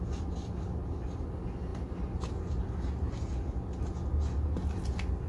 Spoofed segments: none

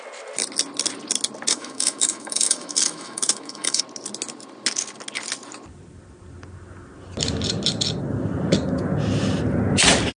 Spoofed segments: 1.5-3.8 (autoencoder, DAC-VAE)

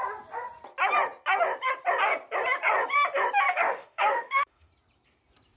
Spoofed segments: 3.5-4.7 (autoencoder, DAC-VAE)

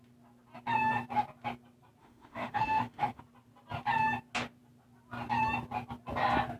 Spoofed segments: 2.0-3.2 (autoencoder, DAC-VAE)